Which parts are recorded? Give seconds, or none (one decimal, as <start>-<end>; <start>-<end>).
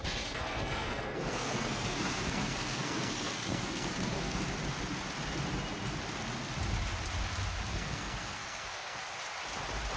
4.4-7.7; 9.0-10.0